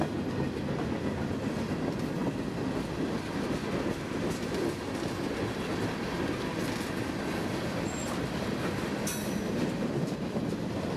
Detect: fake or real real